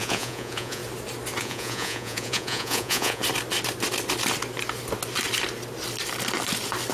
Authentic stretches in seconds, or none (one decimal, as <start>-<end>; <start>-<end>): 0.8-1.4; 3.2-6.9